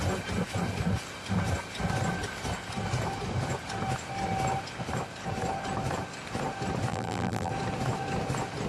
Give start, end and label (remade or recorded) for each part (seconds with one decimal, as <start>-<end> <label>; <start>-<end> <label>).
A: 0.0-6.9 recorded; 6.9-7.5 remade; 7.5-8.7 recorded